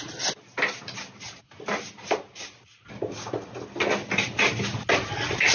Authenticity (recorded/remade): recorded